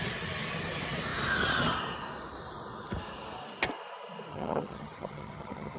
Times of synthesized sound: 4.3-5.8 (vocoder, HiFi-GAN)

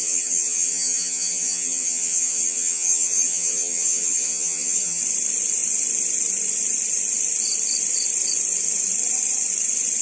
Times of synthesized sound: 0.0-5.0 (vocoder, HiFi-GAN)